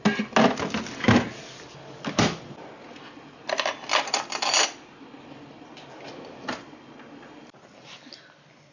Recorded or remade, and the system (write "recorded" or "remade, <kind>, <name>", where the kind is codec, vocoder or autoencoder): recorded